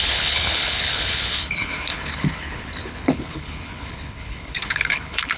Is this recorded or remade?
remade